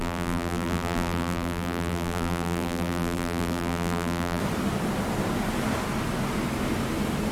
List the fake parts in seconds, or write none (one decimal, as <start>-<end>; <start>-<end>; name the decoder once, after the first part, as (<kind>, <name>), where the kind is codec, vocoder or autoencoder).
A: 0.0-4.4 (vocoder, BigVGAN v2)